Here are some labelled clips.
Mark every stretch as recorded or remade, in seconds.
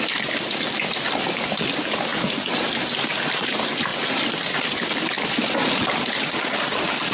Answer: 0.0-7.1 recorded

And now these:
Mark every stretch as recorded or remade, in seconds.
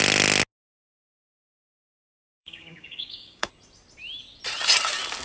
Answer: 0.0-2.4 recorded; 2.4-3.5 remade; 3.5-5.2 recorded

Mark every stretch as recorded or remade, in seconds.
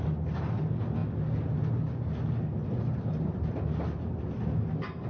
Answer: 0.0-5.1 recorded